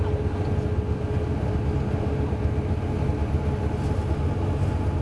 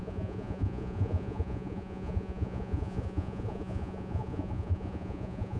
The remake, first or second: second